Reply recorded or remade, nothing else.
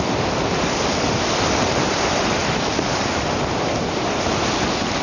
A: recorded